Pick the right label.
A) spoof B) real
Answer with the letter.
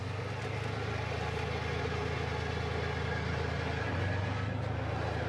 B